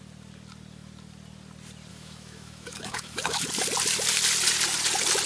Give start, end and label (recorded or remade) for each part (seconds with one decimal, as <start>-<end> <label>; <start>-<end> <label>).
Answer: 0.0-1.9 recorded; 1.9-3.5 remade; 3.5-5.3 recorded